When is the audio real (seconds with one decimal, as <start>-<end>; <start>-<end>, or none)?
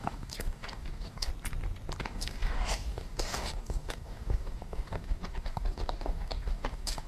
1.3-2.0